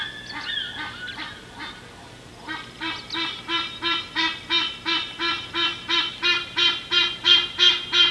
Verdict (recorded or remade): recorded